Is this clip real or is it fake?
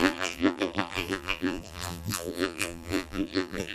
fake